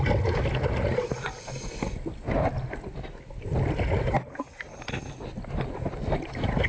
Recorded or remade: recorded